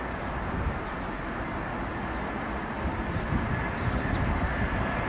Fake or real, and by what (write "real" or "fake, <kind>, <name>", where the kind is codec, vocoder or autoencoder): real